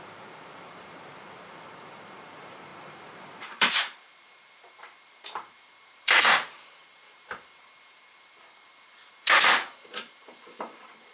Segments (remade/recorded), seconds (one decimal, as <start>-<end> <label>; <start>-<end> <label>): 0.0-11.1 remade